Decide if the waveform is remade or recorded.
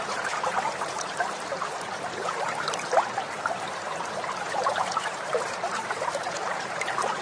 remade